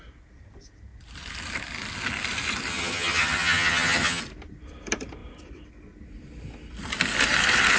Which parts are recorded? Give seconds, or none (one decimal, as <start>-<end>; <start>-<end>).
0.0-2.7; 4.2-7.8